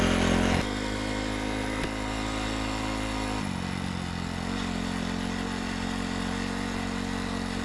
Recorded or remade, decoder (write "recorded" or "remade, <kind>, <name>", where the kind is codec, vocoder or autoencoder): recorded